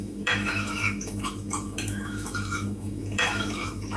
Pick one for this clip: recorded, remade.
remade